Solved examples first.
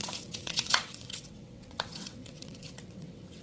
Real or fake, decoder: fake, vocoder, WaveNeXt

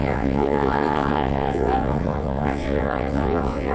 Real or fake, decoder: fake, vocoder, WaveNeXt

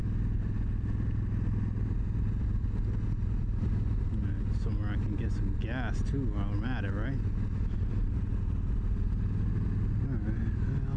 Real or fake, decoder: real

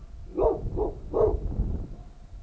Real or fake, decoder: real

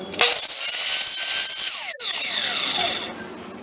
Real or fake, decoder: real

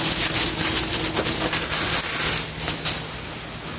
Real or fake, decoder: real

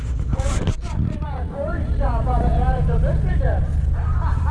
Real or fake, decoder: real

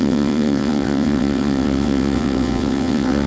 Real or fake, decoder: fake, vocoder, WaveNeXt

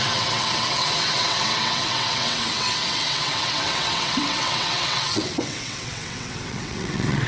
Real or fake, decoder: fake, vocoder, WaveNeXt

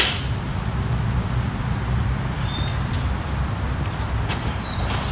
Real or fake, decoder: real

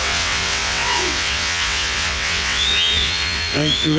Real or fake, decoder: fake, vocoder, WaveNeXt